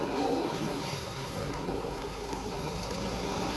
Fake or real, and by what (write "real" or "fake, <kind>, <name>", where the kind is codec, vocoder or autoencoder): fake, codec, SNAC